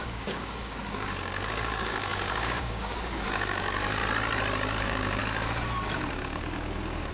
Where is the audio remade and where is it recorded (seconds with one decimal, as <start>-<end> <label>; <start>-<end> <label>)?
0.0-4.0 remade; 4.0-4.8 recorded; 4.8-5.2 remade; 5.2-6.1 recorded; 6.1-7.1 remade